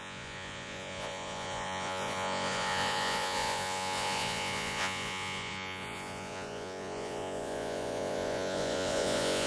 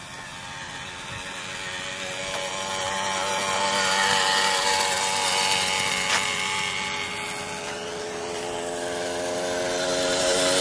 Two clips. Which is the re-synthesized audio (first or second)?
first